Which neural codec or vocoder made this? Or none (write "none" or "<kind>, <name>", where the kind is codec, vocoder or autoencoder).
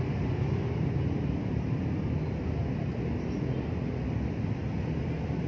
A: none